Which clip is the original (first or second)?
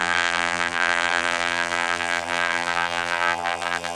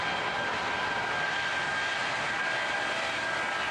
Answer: second